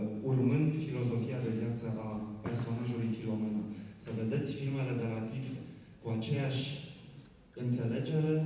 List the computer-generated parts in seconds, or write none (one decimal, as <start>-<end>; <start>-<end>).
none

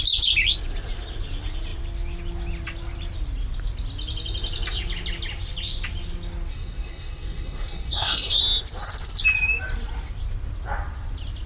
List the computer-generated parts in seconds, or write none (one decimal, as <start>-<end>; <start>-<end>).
6.5-8.4

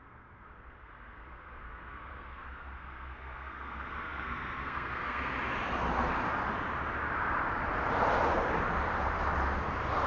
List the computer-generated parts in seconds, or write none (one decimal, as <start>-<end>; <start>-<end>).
0.0-5.3

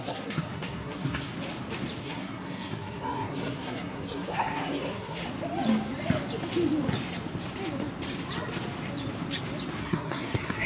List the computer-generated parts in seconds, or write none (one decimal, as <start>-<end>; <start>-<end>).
0.0-1.3; 2.0-5.2; 9.8-10.7

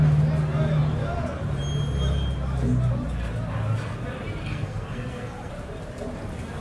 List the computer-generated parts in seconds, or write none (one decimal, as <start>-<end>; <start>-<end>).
4.4-5.5

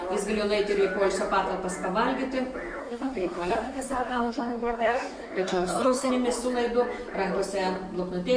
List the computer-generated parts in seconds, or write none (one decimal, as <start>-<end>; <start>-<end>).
2.8-6.1